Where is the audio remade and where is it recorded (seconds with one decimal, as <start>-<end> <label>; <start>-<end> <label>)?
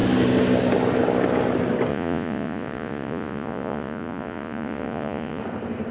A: 0.0-1.9 recorded; 1.9-5.4 remade; 5.4-5.9 recorded